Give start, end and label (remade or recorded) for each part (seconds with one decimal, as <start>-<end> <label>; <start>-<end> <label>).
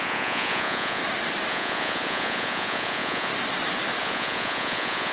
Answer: 0.0-1.0 remade; 1.0-1.5 recorded; 1.5-3.3 remade; 3.3-4.0 recorded; 4.0-5.1 remade